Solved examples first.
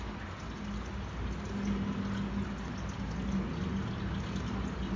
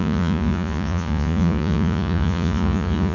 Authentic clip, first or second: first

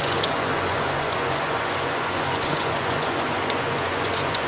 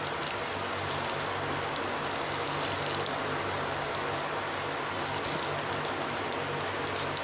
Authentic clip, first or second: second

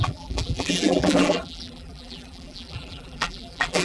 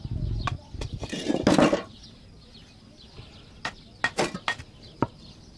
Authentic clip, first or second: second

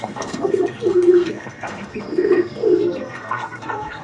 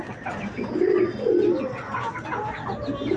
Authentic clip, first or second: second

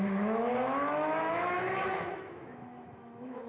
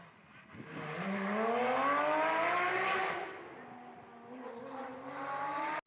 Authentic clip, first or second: second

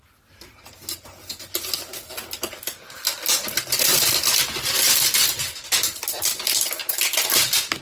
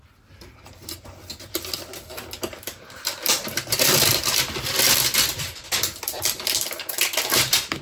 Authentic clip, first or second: first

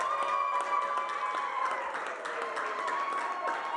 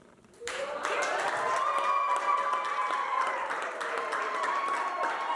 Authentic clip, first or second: first